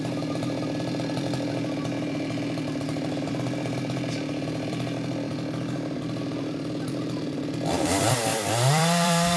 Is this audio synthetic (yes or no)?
yes